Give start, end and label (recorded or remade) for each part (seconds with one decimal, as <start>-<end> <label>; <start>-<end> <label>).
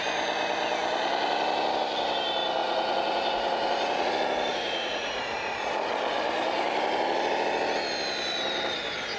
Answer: 0.0-2.6 recorded; 2.6-4.1 remade; 4.1-4.5 recorded; 4.5-5.2 remade; 5.2-9.2 recorded